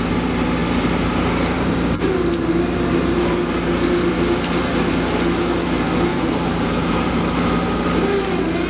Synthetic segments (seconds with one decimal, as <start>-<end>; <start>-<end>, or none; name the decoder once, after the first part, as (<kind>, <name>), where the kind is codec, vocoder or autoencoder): 0.6-4.9 (vocoder, BigVGAN v2); 6.1-7.2